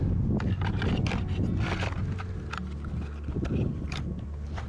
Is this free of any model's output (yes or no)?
yes